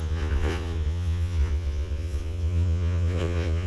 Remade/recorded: remade